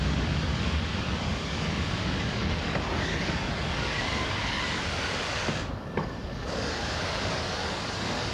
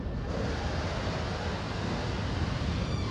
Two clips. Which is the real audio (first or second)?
second